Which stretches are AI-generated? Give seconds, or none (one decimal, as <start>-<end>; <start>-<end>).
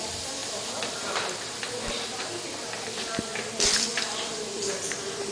none